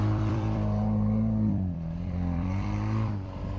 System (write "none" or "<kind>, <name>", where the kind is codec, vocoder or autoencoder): vocoder, BigVGAN v2